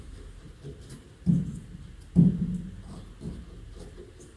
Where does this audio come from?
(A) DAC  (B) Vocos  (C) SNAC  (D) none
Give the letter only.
D